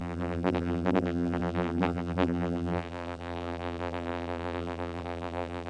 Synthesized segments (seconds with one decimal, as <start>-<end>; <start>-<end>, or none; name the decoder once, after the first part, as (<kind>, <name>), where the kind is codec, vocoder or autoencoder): 0.0-5.7 (vocoder, BigVGAN v2)